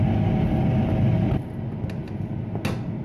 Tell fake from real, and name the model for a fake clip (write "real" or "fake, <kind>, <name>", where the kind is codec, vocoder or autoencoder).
real